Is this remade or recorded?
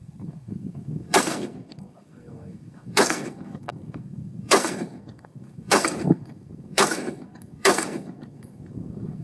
remade